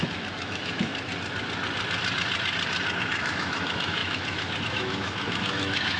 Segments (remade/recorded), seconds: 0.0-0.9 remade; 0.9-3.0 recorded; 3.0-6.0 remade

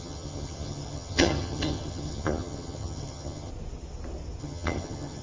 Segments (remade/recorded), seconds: 0.0-3.5 remade; 3.5-4.4 recorded; 4.4-5.2 remade

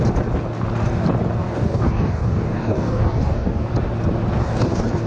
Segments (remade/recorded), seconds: 0.0-1.4 recorded; 1.4-3.7 remade; 3.7-4.4 recorded; 4.4-5.1 remade

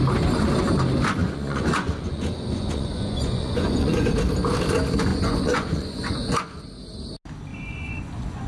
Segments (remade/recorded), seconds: 0.0-1.2 recorded; 1.2-4.1 remade; 4.1-5.1 recorded; 5.1-6.6 remade; 6.6-7.5 recorded; 7.5-8.5 remade

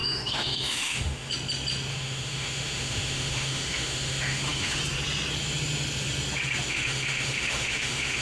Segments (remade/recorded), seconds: 0.0-1.3 remade; 1.3-1.9 recorded; 1.9-4.8 remade; 4.8-6.7 recorded; 6.7-8.2 remade

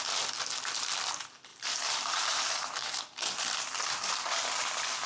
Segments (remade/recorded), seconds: 0.0-1.5 recorded; 1.5-3.0 remade; 3.0-5.1 recorded

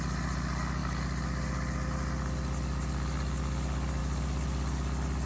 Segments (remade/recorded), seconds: 0.0-5.3 recorded

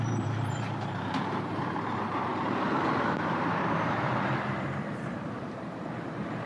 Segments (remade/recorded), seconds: 0.0-6.5 remade